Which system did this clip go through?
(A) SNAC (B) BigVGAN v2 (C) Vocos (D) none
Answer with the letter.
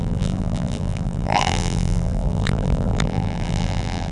B